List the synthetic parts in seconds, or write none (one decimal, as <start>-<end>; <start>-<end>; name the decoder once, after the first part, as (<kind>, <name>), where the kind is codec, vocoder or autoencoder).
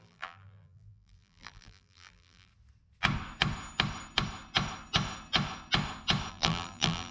0.0-2.5 (vocoder, BigVGAN v2); 6.3-7.1